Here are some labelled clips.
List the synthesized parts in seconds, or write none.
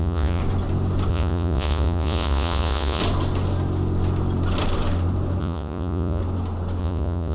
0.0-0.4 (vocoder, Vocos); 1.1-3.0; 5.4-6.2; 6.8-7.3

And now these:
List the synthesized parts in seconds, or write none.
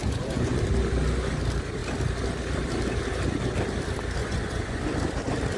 0.0-0.6 (vocoder, Vocos); 4.2-4.9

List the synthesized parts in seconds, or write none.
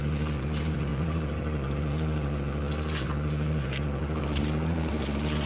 0.0-5.5 (vocoder, Vocos)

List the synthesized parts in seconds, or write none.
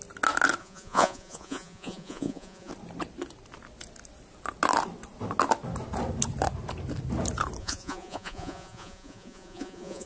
0.6-2.7 (vocoder, Vocos); 7.6-10.1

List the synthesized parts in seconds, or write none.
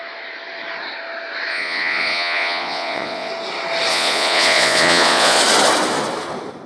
1.5-3.3 (vocoder, Vocos); 3.9-5.4